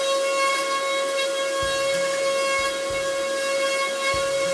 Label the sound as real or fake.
real